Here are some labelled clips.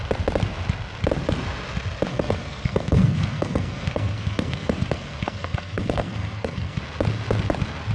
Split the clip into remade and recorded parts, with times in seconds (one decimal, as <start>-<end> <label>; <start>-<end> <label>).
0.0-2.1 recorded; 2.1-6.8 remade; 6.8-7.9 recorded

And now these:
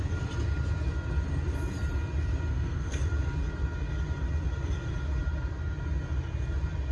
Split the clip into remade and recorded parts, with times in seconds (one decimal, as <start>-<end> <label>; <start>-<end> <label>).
0.0-2.5 recorded; 2.5-3.0 remade; 3.0-6.9 recorded

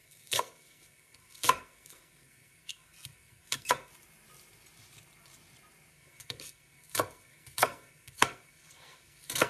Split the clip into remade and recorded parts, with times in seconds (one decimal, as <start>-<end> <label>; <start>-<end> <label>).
0.0-3.9 remade; 3.9-5.9 recorded; 5.9-9.5 remade

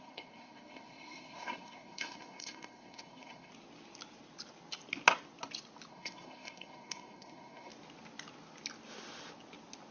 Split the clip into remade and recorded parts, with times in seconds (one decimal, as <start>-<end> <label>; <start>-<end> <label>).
0.0-3.5 remade; 3.5-5.9 recorded; 5.9-7.7 remade; 7.7-9.9 recorded

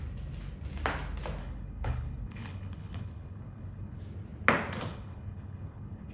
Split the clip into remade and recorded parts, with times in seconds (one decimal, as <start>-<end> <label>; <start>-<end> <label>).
0.0-1.4 recorded; 1.4-4.0 remade; 4.0-4.9 recorded; 4.9-6.1 remade

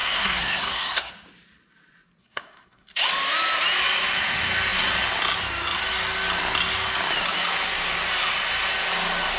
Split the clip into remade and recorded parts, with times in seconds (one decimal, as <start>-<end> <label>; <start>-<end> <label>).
0.0-1.1 remade; 1.1-2.2 recorded; 2.2-3.0 remade; 3.0-9.4 recorded

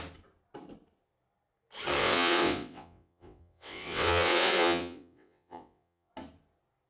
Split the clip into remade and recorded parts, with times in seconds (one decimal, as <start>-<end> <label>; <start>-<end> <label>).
0.0-2.0 recorded; 2.0-6.1 remade; 6.1-6.9 recorded

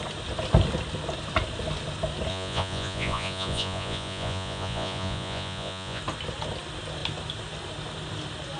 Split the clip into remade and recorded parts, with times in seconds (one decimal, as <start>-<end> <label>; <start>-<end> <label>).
0.0-2.3 recorded; 2.3-6.0 remade; 6.0-8.6 recorded